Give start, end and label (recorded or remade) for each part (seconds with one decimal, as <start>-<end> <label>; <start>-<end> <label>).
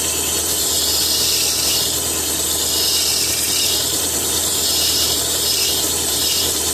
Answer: 0.0-0.9 remade; 0.9-3.3 recorded; 3.3-6.7 remade